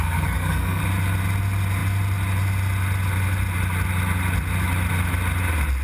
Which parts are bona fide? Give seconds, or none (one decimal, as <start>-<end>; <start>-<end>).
0.8-5.8